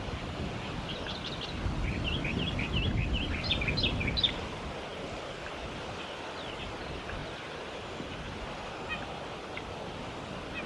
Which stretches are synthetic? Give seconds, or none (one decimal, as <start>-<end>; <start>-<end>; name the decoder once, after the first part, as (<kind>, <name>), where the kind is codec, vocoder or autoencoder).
none